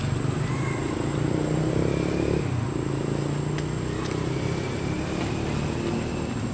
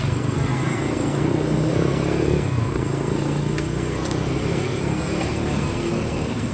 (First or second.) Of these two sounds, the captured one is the first